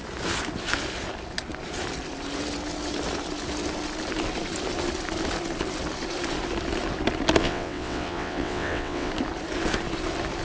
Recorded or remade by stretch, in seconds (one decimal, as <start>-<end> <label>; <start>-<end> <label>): 0.0-7.4 recorded; 7.4-9.1 remade; 9.1-10.4 recorded